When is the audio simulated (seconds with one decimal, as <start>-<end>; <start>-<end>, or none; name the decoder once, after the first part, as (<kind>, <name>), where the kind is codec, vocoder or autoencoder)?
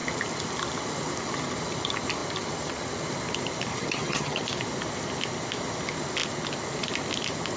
3.7-4.4 (vocoder, HiFi-GAN)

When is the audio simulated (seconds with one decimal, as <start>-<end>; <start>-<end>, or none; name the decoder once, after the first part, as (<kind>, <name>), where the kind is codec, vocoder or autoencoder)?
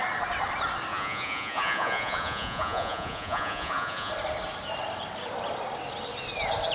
0.9-4.1 (vocoder, Vocos)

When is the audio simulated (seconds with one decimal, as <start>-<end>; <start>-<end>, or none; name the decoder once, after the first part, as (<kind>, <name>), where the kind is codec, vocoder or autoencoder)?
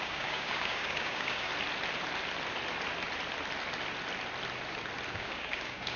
0.0-1.5 (codec, DAC); 5.1-6.0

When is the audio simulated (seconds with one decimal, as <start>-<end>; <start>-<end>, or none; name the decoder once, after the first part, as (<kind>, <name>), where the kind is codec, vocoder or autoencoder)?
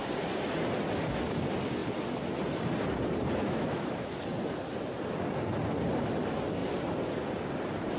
3.4-4.1 (autoencoder, DAC-VAE)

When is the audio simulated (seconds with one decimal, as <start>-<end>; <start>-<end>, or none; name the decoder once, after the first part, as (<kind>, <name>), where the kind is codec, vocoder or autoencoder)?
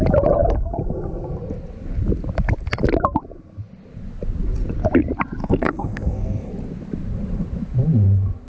5.4-6.5 (codec, SNAC)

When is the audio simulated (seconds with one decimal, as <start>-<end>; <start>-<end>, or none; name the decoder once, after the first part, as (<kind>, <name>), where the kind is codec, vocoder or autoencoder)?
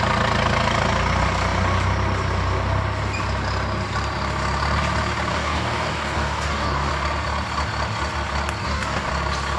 5.3-6.9 (codec, DAC); 8.6-9.1